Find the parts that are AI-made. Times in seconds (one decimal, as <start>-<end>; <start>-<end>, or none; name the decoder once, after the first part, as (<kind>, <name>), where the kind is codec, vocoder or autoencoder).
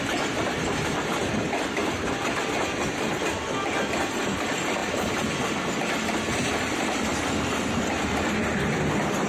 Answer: none